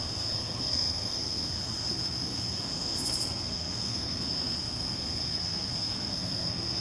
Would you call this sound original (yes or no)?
no